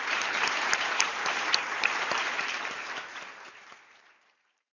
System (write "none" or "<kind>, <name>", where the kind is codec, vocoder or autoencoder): vocoder, BigVGAN v2